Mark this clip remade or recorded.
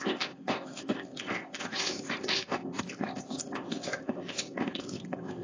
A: remade